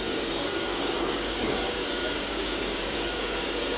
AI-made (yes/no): yes